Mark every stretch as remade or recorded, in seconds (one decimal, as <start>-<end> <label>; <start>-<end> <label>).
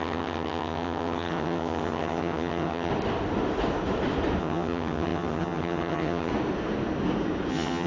0.0-2.9 remade; 2.9-4.4 recorded; 4.4-6.3 remade; 6.3-7.5 recorded; 7.5-7.9 remade